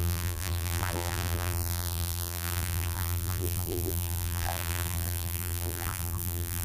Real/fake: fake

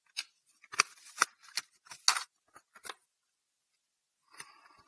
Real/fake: real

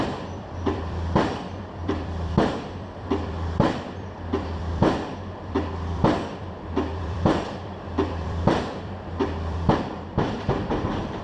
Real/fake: fake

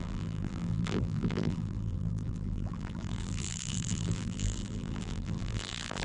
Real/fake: fake